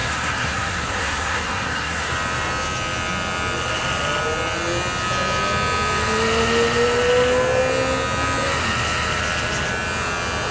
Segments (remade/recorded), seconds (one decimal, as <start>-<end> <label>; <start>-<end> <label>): 0.0-2.1 remade; 2.1-10.5 recorded